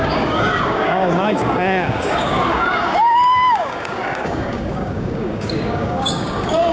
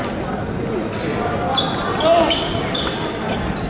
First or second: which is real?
second